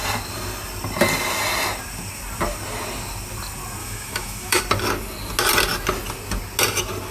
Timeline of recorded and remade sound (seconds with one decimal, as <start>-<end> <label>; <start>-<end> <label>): 0.0-3.8 recorded; 3.8-4.6 remade; 4.6-7.1 recorded